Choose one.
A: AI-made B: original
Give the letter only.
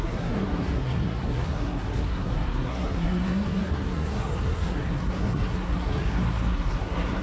A